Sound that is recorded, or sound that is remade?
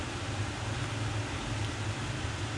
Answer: recorded